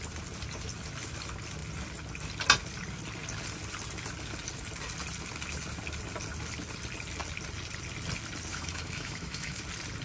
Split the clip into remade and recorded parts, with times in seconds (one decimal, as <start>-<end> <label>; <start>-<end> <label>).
0.0-8.5 recorded; 8.5-9.6 remade; 9.6-10.0 recorded